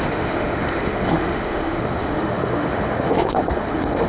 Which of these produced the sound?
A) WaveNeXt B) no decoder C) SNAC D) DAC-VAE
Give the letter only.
D